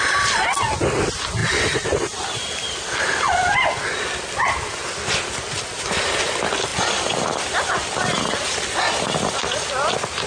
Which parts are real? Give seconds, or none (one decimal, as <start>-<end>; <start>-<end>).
0.0-10.3